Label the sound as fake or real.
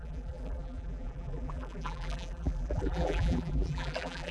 fake